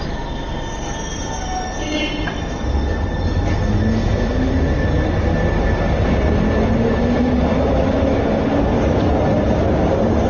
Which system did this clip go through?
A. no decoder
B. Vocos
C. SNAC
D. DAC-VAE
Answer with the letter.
A